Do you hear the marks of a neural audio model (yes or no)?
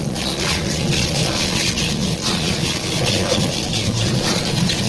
yes